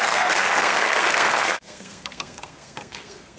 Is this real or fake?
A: fake